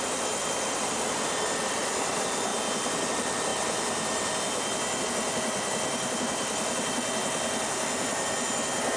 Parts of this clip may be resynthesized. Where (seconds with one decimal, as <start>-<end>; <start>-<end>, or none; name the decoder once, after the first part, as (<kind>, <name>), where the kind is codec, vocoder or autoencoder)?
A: 0.0-2.5 (vocoder, BigVGAN v2); 3.1-3.5; 5.1-9.0

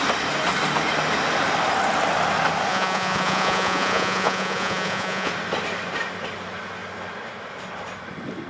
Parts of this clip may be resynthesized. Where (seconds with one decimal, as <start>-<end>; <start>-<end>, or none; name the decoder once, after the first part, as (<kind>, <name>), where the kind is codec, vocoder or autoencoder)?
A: 2.7-5.3 (vocoder, Vocos)